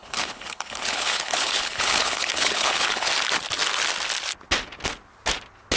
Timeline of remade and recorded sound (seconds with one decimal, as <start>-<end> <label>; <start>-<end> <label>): 0.0-3.1 remade; 3.1-5.8 recorded